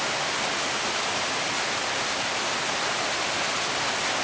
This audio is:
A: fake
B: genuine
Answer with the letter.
B